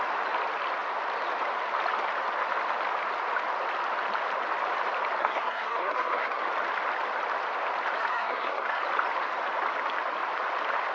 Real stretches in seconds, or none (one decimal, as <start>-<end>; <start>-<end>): 0.0-5.2; 6.4-8.0; 8.8-10.9